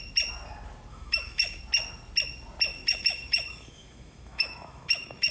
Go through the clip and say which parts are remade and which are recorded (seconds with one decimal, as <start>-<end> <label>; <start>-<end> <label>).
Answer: 0.0-0.9 recorded; 0.9-1.6 remade; 1.6-2.7 recorded; 2.7-5.3 remade